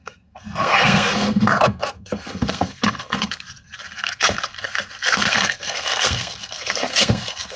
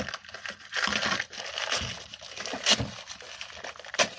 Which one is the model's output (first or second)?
first